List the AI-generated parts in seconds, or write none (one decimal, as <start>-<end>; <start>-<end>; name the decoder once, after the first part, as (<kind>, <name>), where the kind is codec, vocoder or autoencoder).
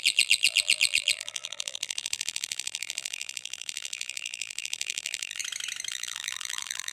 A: 0.0-5.4 (vocoder, BigVGAN v2); 5.9-6.9